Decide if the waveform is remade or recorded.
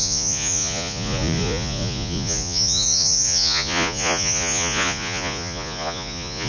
remade